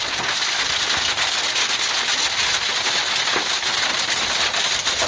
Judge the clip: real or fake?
real